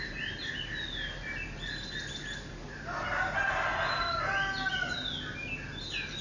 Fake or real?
real